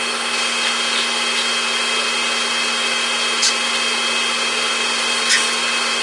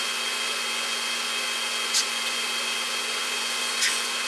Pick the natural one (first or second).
first